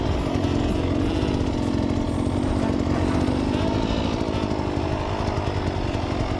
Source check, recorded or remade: recorded